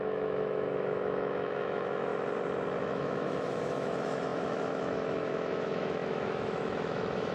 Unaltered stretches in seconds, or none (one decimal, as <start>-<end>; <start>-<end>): 2.1-2.8